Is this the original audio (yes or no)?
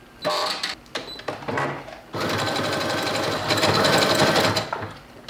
yes